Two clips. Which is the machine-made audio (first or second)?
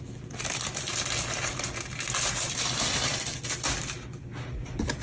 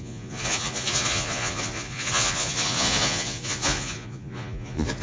second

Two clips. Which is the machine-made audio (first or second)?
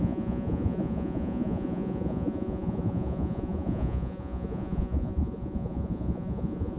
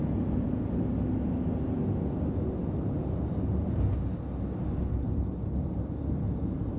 first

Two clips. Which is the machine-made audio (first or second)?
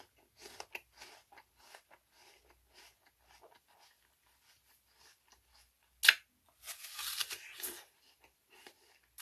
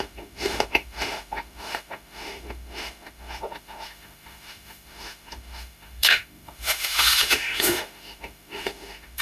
second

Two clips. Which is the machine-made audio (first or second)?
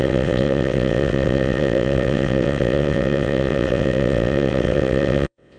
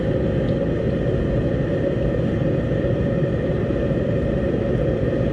first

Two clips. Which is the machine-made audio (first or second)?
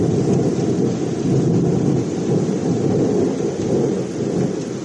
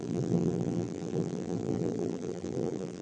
second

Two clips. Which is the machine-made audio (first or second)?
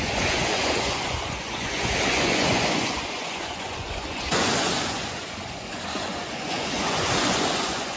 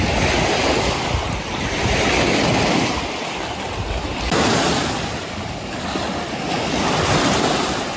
first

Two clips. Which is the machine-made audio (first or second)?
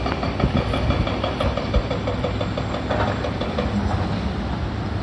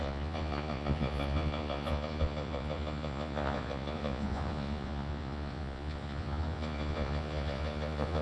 second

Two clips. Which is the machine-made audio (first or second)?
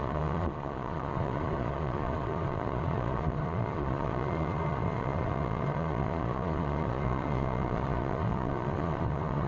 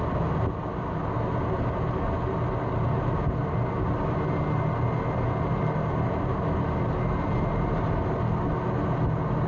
first